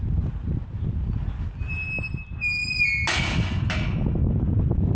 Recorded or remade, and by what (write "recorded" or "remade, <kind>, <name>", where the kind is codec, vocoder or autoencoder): recorded